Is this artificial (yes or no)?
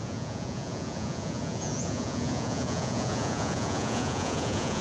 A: yes